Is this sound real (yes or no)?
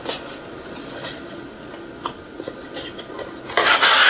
yes